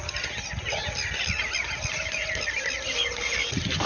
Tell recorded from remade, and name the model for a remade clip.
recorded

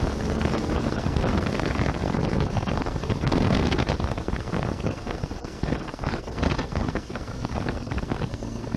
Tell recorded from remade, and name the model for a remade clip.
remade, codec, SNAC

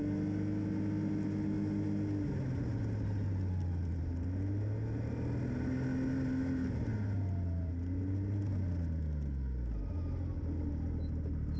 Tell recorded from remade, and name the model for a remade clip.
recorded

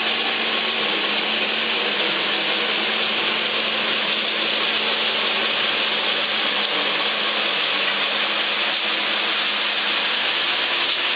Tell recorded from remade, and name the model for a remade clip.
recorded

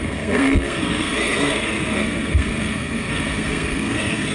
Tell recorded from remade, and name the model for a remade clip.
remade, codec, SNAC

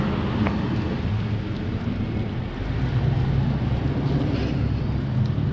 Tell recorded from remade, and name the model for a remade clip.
recorded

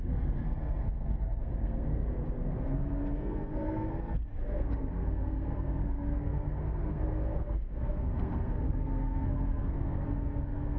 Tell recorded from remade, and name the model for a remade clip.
remade, codec, SNAC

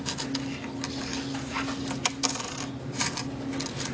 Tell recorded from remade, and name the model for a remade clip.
recorded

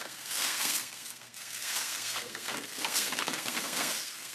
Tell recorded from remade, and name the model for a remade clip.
remade, codec, SNAC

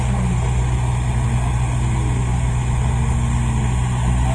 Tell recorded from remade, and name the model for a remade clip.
recorded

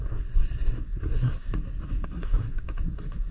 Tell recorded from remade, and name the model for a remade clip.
remade, codec, SNAC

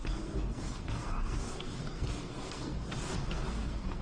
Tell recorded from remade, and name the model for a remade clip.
remade, codec, SNAC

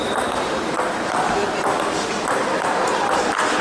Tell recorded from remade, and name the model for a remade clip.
recorded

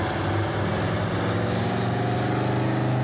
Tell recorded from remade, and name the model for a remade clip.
recorded